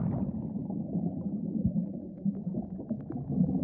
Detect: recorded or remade recorded